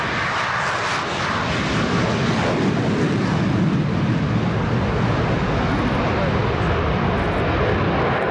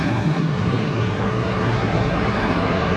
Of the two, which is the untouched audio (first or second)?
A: first